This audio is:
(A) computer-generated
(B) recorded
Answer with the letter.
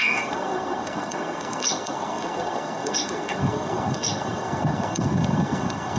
A